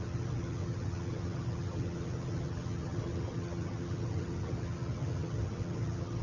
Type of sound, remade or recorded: remade